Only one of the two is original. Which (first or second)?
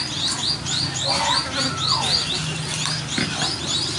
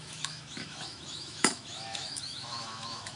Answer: first